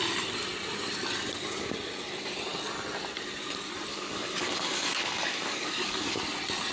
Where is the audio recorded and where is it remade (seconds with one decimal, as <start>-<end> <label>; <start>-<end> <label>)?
0.0-3.9 recorded; 3.9-6.2 remade; 6.2-6.7 recorded